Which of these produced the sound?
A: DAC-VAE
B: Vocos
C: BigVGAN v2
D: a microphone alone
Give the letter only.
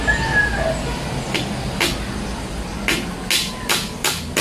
D